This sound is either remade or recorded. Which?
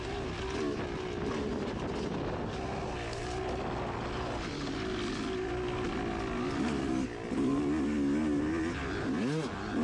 recorded